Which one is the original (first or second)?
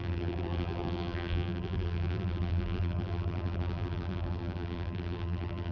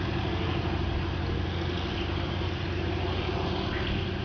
second